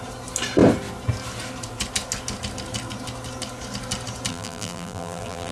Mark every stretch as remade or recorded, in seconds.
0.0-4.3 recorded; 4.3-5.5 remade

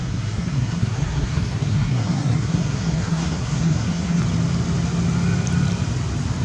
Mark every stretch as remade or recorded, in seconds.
0.0-4.2 remade; 4.2-6.4 recorded

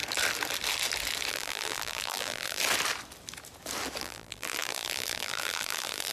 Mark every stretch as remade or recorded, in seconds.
0.0-1.3 recorded; 1.3-2.6 remade; 2.6-4.0 recorded; 4.0-6.1 remade

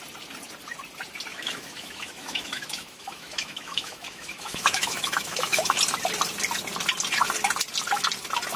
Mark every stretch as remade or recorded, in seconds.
0.0-1.3 recorded; 1.3-5.8 remade; 5.8-8.6 recorded

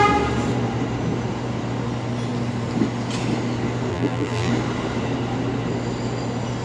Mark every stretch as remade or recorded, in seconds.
0.0-3.9 recorded; 3.9-4.5 remade; 4.5-6.6 recorded

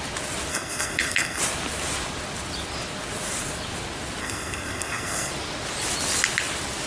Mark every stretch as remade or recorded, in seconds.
0.0-0.5 recorded; 0.5-1.4 remade; 1.4-4.2 recorded; 4.2-5.3 remade; 5.3-6.9 recorded

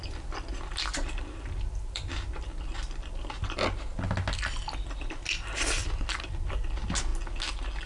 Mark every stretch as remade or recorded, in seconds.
0.0-7.9 recorded

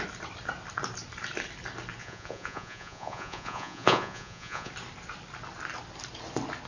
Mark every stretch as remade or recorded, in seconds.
0.0-2.0 recorded; 2.0-4.7 remade; 4.7-6.7 recorded